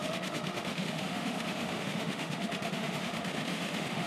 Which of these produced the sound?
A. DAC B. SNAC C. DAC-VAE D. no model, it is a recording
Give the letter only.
C